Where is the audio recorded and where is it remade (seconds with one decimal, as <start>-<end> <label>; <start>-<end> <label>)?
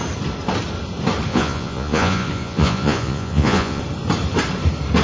0.0-1.3 recorded; 1.3-3.8 remade; 3.8-5.0 recorded